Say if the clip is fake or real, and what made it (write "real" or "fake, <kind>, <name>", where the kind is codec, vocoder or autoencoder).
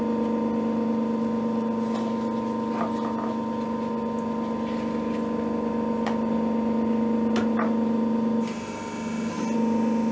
real